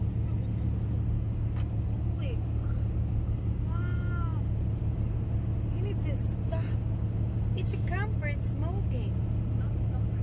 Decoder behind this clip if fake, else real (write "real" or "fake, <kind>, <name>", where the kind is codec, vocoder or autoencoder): real